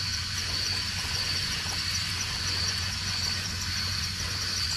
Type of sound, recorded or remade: remade